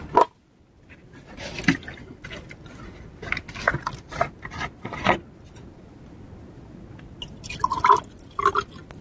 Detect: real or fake real